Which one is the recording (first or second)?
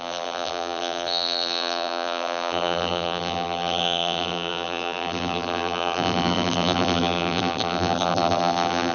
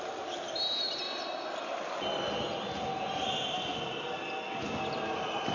second